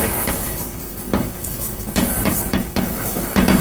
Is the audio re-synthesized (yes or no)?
yes